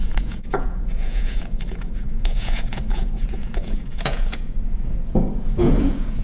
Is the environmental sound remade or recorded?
remade